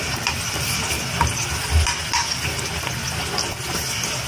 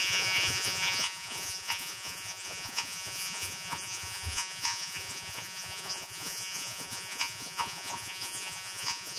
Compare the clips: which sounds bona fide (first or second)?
first